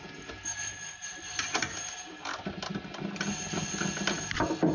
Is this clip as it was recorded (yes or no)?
yes